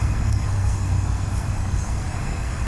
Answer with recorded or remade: remade